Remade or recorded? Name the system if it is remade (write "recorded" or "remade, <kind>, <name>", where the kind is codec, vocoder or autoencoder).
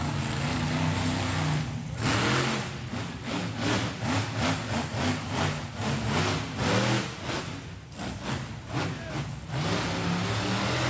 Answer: recorded